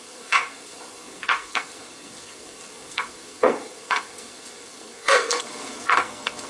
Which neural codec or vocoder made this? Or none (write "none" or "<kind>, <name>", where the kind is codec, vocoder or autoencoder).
codec, SNAC